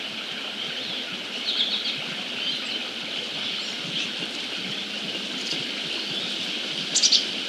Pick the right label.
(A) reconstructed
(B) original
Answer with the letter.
B